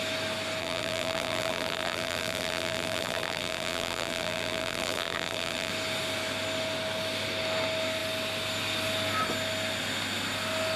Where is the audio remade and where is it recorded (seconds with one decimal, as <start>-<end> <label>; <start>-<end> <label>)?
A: 0.0-0.6 recorded; 0.6-5.7 remade; 5.7-10.8 recorded